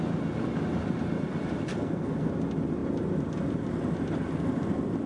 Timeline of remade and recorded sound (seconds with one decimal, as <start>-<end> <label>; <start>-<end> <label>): 0.0-1.7 recorded; 1.7-2.3 remade; 2.3-5.1 recorded